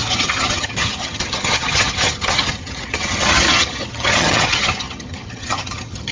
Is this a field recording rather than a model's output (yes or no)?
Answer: no